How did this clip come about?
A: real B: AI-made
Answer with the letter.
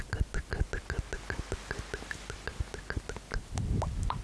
A